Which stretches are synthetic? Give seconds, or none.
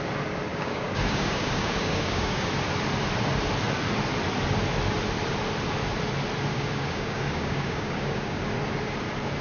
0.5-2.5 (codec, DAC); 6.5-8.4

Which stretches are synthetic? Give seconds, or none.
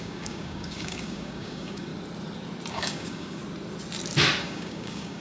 0.0-1.9 (codec, DAC); 2.7-3.4; 4.4-5.2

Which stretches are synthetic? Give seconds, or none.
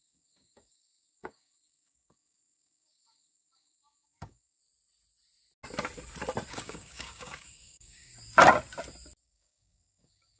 0.0-4.6 (codec, DAC); 6.5-8.1; 9.2-10.4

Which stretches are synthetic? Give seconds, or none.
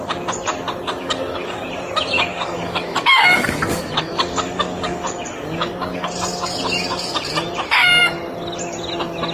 1.0-1.7 (codec, DAC); 2.3-6.1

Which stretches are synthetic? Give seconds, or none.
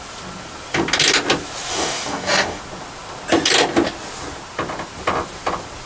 1.7-2.6 (codec, DAC)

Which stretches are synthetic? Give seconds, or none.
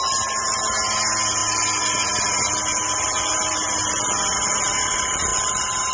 none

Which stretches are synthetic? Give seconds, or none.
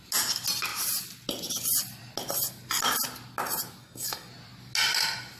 3.8-4.3 (codec, DAC)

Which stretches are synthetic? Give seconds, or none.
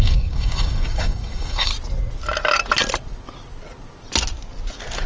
0.0-1.7 (codec, DAC)